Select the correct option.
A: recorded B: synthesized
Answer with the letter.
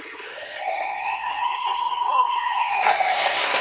B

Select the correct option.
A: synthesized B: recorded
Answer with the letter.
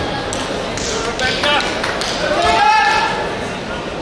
B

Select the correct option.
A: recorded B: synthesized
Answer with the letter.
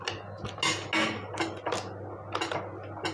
A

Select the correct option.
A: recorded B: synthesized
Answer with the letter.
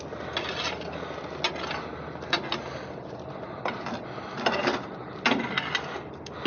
A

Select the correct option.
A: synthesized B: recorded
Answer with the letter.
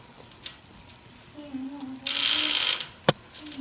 B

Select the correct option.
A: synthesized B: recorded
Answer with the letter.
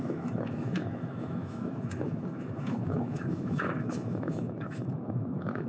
A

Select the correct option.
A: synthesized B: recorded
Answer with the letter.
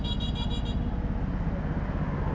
B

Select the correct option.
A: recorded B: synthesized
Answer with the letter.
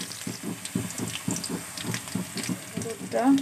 A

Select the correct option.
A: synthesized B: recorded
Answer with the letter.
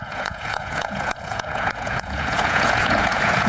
A